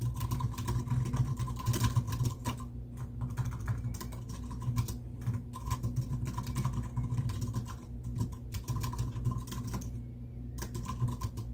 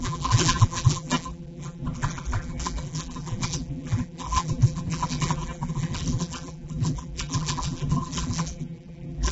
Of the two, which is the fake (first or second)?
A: second